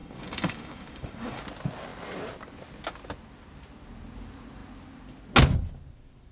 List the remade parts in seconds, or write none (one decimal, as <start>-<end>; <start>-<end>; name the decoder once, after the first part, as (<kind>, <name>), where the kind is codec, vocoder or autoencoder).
0.0-1.4 (codec, DAC)